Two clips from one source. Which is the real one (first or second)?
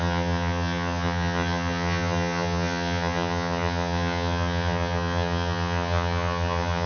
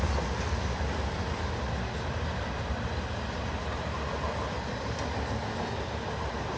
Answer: second